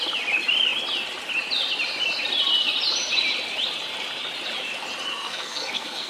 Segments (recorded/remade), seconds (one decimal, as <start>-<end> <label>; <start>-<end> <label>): 0.0-5.1 recorded; 5.1-6.1 remade